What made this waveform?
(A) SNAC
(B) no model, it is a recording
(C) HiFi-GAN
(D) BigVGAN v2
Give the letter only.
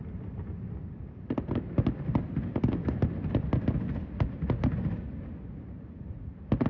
B